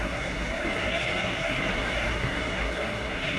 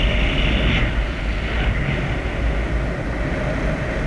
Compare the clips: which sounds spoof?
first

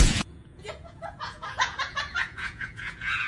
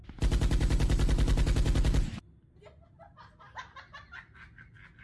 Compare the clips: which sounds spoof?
first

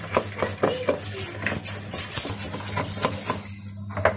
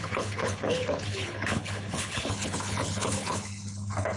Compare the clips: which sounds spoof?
second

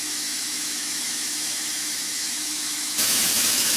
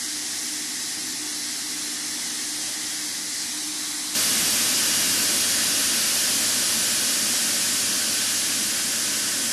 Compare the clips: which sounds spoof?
first